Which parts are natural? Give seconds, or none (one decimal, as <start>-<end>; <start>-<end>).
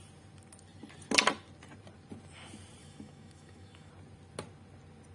0.0-2.8; 3.9-5.1